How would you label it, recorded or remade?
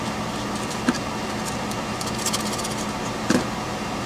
remade